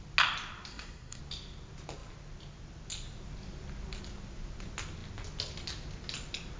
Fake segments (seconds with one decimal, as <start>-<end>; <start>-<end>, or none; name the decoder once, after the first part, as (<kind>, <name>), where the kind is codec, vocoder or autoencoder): 0.7-1.2 (codec, SNAC)